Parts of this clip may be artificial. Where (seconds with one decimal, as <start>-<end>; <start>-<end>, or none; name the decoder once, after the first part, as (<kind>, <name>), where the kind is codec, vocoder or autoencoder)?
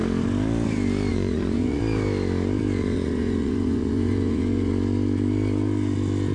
1.1-1.8 (vocoder, Vocos); 2.8-4.7